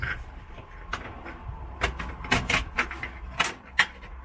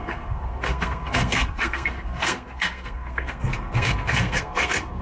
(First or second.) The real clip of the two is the first